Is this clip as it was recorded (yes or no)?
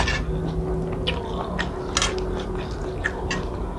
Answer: yes